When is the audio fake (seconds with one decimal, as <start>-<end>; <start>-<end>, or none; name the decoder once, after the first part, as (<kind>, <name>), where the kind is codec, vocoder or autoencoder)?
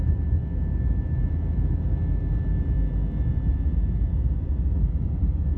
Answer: 0.0-0.4 (vocoder, BigVGAN v2); 3.3-5.6